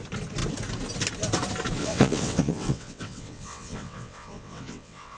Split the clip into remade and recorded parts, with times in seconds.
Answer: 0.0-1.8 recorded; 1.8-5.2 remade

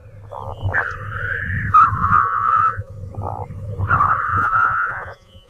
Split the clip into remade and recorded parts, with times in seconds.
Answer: 0.0-2.0 recorded; 2.0-2.9 remade; 2.9-4.3 recorded; 4.3-5.5 remade

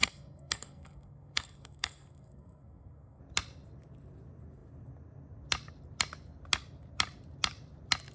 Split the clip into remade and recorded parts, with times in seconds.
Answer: 0.0-3.2 remade; 3.2-8.1 recorded

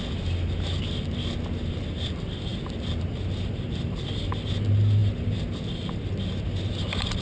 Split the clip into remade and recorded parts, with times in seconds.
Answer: 0.0-7.2 recorded